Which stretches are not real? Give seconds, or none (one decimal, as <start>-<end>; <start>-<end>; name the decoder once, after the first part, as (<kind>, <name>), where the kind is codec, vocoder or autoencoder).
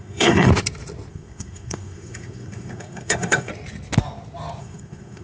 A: 0.0-0.5 (codec, SNAC); 1.1-3.5; 4.6-5.2